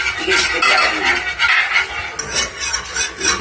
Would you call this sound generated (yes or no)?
no